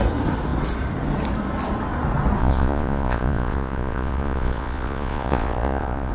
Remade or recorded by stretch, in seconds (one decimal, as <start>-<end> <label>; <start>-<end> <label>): 0.0-2.4 recorded; 2.4-6.1 remade